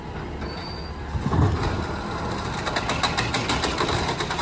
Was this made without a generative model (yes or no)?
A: yes